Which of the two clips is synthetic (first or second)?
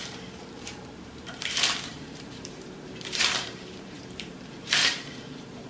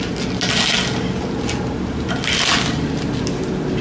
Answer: first